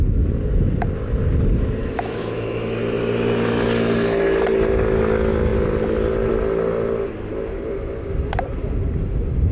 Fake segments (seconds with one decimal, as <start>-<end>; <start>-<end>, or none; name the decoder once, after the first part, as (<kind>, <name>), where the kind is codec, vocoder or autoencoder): 1.8-2.8 (autoencoder, DAC-VAE)